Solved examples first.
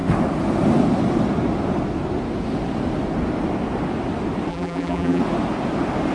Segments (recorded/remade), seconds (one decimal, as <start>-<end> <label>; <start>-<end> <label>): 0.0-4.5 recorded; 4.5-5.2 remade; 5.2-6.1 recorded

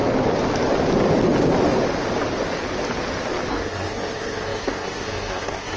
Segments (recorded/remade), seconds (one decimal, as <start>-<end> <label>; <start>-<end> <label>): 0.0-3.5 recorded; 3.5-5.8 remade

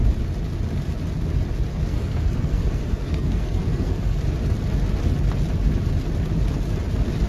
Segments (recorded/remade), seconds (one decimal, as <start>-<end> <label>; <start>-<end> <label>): 0.0-1.7 recorded; 1.7-4.2 remade; 4.2-7.3 recorded

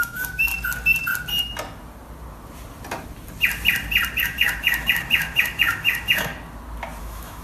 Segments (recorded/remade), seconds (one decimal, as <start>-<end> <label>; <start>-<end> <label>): 0.0-0.5 remade; 0.5-4.2 recorded; 4.2-6.3 remade; 6.3-7.0 recorded; 7.0-7.4 remade

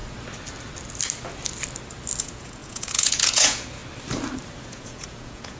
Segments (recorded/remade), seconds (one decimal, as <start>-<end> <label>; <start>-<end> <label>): 0.0-2.2 recorded; 2.2-3.8 remade; 3.8-4.6 recorded; 4.6-5.6 remade